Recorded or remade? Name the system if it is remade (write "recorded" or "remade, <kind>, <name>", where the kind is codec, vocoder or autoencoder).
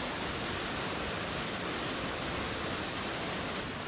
recorded